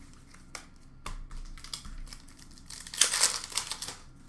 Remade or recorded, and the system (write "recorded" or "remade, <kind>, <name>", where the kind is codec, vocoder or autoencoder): recorded